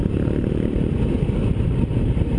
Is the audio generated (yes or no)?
yes